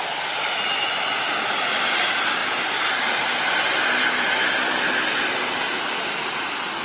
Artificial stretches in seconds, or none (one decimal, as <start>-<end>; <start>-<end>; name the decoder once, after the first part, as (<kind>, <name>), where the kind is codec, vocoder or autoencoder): none